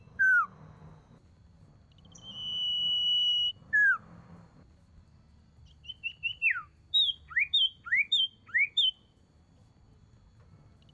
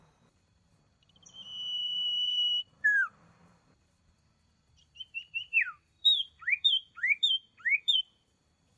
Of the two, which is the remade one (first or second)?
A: second